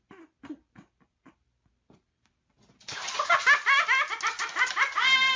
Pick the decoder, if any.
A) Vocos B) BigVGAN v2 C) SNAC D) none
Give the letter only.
D